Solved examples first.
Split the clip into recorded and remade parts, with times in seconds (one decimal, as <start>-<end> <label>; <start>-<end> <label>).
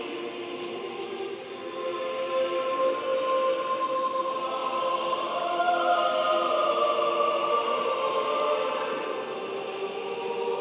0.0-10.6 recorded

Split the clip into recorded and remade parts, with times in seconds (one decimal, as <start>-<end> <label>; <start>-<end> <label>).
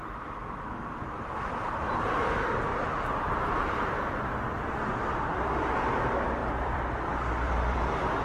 0.0-2.7 recorded; 2.7-4.2 remade; 4.2-6.4 recorded; 6.4-8.2 remade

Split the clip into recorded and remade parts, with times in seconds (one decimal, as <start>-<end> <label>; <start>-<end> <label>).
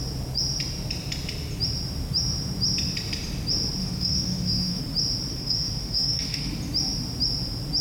0.0-3.8 recorded; 3.8-4.8 remade; 4.8-5.3 recorded; 5.3-6.5 remade; 6.5-7.8 recorded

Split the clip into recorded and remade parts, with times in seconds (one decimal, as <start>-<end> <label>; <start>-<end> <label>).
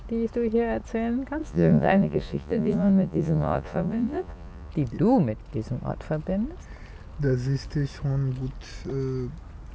0.0-1.4 recorded; 1.4-4.7 remade; 4.7-9.7 recorded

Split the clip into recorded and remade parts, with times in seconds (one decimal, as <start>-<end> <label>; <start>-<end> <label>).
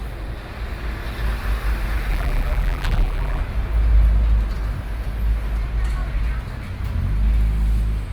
0.0-2.1 recorded; 2.1-3.4 remade; 3.4-8.1 recorded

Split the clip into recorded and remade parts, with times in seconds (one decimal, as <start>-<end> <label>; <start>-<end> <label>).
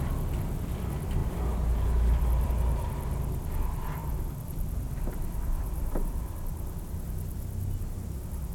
0.0-1.2 recorded; 1.2-2.5 remade; 2.5-4.0 recorded; 4.0-7.8 remade; 7.8-8.5 recorded